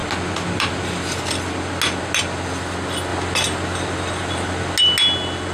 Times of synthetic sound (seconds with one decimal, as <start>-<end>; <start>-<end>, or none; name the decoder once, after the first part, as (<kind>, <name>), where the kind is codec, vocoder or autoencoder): none